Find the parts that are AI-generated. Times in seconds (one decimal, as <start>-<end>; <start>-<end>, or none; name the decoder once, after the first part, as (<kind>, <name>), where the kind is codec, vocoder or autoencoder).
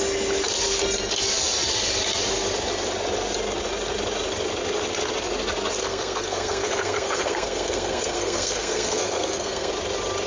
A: 5.8-9.7 (codec, SNAC)